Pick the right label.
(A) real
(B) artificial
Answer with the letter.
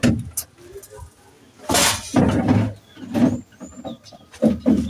A